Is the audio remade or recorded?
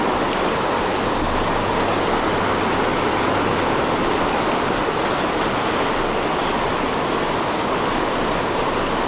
recorded